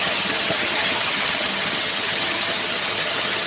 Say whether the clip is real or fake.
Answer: fake